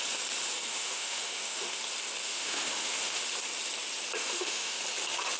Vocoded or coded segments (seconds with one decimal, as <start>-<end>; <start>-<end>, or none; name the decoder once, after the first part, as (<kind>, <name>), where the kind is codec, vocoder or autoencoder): 0.7-1.8 (autoencoder, DAC-VAE); 2.2-3.2; 4.2-4.8